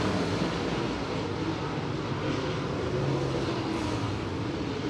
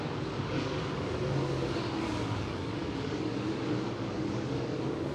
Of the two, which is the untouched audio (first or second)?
first